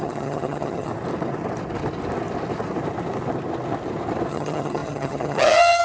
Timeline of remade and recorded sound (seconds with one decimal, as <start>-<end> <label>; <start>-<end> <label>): 0.0-0.9 remade; 0.9-4.3 recorded; 4.3-5.8 remade